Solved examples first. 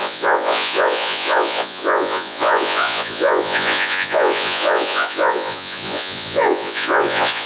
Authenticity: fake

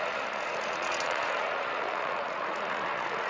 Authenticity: fake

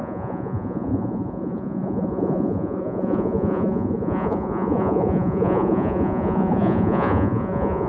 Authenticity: fake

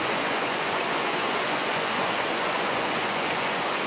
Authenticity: fake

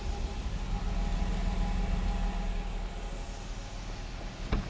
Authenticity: real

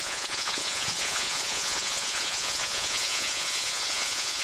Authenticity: fake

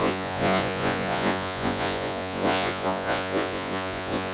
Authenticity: fake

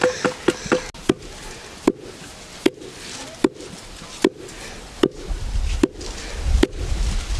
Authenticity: real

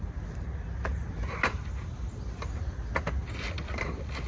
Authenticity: real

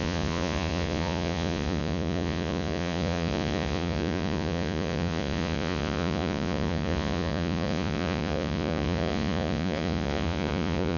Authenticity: fake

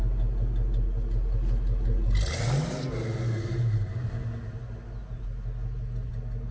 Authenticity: real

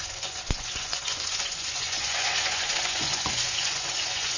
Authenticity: fake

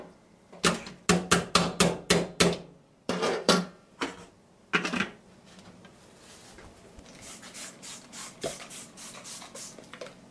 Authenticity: real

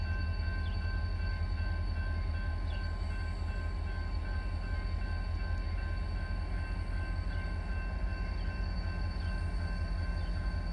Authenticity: real